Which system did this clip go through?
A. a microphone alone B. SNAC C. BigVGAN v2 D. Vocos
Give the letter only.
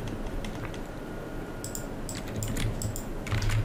A